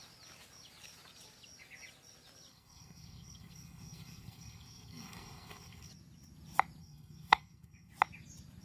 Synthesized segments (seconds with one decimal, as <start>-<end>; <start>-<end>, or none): 2.5-5.9; 6.8-7.9